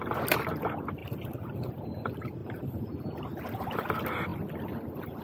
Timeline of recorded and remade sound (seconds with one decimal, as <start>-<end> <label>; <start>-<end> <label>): 0.0-1.0 recorded; 1.0-1.8 remade; 1.8-2.4 recorded; 2.4-3.4 remade; 3.4-4.3 recorded; 4.3-5.2 remade